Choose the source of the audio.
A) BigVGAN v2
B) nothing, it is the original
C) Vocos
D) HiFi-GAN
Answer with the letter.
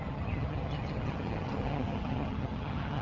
D